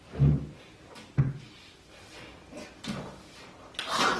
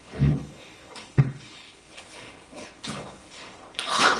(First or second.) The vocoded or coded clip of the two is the second